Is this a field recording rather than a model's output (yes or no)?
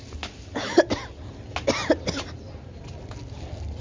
yes